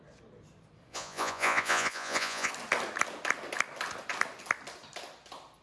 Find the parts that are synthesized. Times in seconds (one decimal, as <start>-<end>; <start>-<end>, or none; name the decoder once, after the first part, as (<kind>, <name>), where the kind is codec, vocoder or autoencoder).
0.9-2.5 (vocoder, Vocos)